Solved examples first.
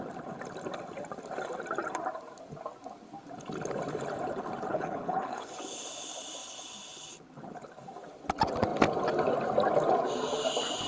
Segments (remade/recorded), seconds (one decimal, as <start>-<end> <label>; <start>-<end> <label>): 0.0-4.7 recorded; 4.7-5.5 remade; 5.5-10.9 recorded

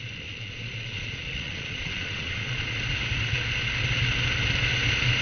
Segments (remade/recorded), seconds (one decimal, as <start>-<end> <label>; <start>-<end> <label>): 0.0-2.8 remade; 2.8-5.2 recorded

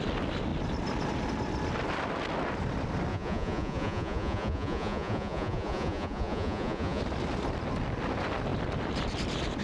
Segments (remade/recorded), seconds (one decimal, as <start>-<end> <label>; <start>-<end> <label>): 0.0-3.1 recorded; 3.1-7.0 remade; 7.0-9.6 recorded

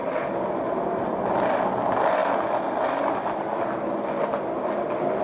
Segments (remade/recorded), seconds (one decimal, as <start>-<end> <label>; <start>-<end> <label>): 0.0-5.2 recorded

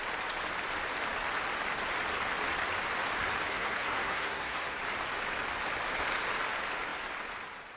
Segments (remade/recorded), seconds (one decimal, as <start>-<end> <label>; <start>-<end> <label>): 0.0-3.5 recorded; 3.5-4.8 remade; 4.8-7.8 recorded

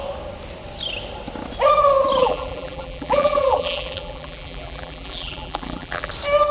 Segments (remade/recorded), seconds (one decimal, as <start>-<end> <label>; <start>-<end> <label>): 0.0-2.2 recorded; 2.2-6.1 remade; 6.1-6.5 recorded